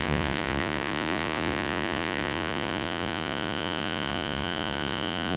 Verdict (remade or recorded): remade